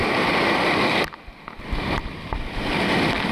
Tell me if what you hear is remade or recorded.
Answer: recorded